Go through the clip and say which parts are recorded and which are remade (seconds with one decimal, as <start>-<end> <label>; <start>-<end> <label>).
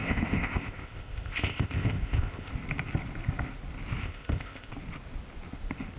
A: 0.0-2.5 remade; 2.5-4.0 recorded; 4.0-4.7 remade; 4.7-6.0 recorded